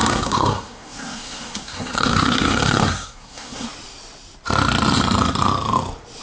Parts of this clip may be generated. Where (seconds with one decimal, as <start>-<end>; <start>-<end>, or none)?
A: 0.0-3.7